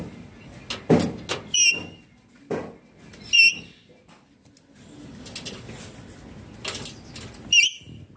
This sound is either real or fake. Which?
real